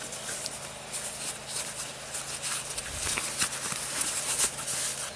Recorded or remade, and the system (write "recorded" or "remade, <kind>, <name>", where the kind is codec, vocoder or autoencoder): recorded